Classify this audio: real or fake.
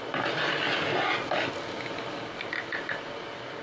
real